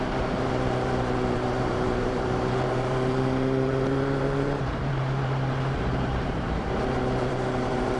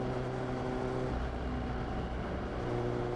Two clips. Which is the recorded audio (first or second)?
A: second